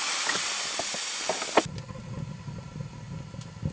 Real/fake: real